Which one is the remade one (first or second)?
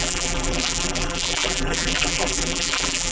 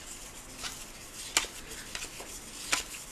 first